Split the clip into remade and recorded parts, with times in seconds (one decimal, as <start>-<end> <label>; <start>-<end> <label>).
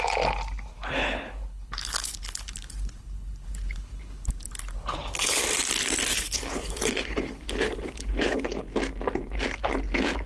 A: 0.0-0.7 recorded; 0.7-5.4 remade; 5.4-6.1 recorded; 6.1-8.6 remade; 8.6-10.3 recorded